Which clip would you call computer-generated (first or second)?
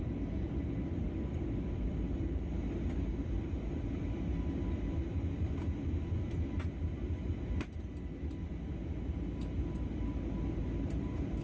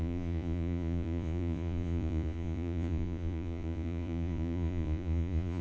second